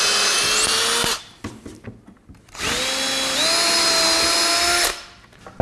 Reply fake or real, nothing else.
real